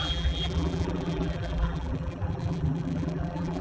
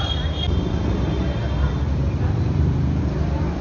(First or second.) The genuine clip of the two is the second